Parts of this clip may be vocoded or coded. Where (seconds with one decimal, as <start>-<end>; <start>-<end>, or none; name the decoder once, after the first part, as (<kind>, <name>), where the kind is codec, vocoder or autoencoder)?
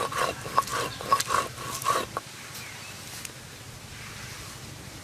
none